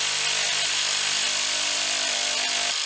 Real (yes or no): yes